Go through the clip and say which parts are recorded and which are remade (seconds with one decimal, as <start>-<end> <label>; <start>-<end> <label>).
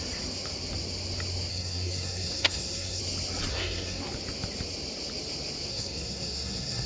0.0-1.5 recorded; 1.5-3.0 remade; 3.0-3.5 recorded; 3.5-4.0 remade; 4.0-5.7 recorded; 5.7-6.9 remade